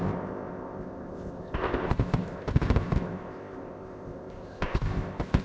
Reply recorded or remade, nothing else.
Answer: remade